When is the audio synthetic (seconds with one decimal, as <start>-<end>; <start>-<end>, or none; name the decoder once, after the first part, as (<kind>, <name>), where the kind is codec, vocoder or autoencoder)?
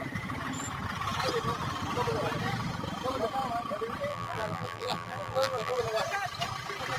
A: 4.1-5.8 (vocoder, BigVGAN v2)